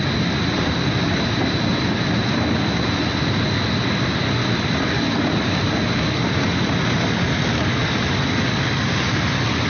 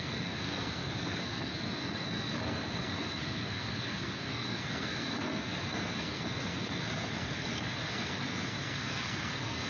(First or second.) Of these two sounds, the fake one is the second